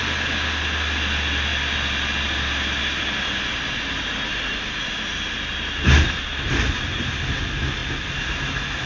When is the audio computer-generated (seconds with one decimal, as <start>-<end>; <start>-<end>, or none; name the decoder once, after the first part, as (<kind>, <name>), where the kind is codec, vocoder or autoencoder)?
none